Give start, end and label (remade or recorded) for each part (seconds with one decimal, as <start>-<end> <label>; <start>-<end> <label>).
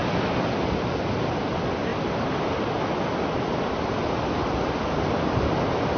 0.0-6.0 recorded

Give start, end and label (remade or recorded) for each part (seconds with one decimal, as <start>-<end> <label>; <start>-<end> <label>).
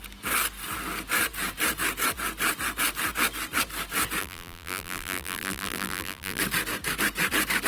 0.0-4.2 recorded; 4.2-6.4 remade; 6.4-7.7 recorded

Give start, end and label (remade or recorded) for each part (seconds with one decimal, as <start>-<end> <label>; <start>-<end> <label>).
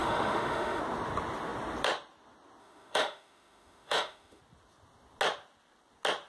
0.0-0.8 remade; 0.8-2.6 recorded; 2.6-4.4 remade; 4.4-6.3 recorded